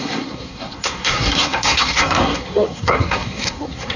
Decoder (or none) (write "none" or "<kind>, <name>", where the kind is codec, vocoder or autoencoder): codec, SNAC